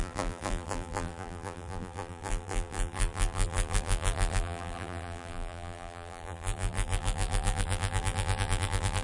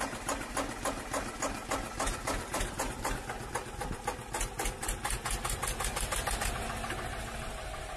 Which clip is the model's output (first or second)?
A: first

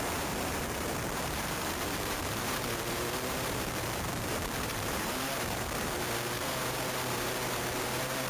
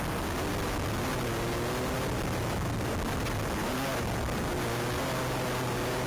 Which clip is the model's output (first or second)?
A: first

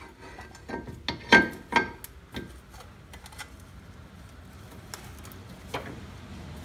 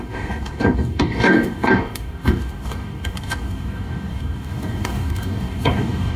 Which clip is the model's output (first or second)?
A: second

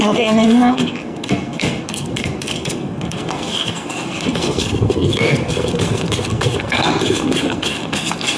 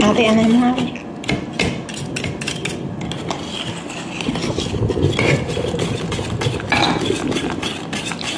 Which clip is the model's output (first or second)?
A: first